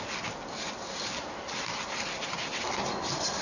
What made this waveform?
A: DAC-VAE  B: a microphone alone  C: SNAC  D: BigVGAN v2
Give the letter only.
B